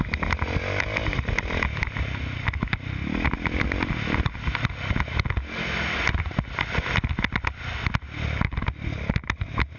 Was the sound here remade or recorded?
recorded